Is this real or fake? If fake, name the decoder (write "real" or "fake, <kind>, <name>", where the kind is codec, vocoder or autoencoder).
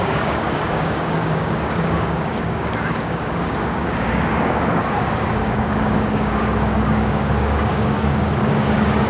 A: fake, codec, DAC